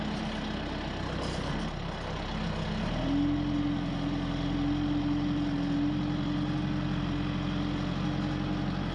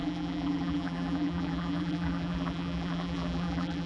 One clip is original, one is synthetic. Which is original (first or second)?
first